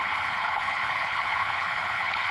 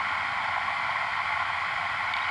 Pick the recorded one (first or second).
second